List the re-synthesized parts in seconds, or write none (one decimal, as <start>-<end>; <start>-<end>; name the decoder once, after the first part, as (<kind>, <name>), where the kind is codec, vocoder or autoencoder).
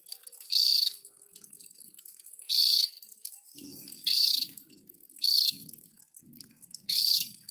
0.0-7.5 (codec, SNAC)